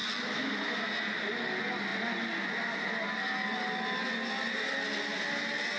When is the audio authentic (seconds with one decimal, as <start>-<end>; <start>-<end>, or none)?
0.0-5.8